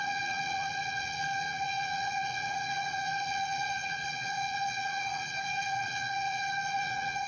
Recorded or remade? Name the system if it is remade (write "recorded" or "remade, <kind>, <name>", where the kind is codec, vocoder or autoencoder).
remade, vocoder, Vocos